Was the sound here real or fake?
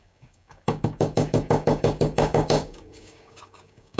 fake